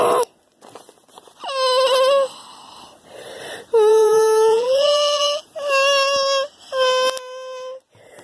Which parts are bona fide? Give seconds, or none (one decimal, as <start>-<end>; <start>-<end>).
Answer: 0.0-3.9; 5.4-8.2